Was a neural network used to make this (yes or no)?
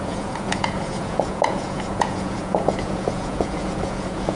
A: yes